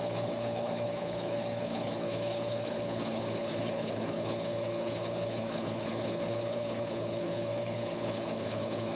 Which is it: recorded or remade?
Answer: remade